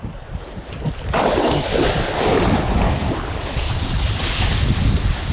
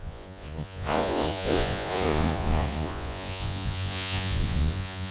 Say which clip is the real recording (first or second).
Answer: first